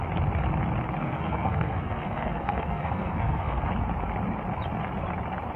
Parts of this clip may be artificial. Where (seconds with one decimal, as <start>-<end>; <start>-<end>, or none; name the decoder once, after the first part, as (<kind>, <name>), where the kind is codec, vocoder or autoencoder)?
1.0-3.6 (codec, SNAC)